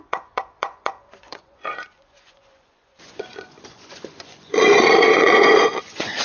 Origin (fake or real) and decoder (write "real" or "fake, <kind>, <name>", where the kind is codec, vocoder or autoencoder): fake, vocoder, Vocos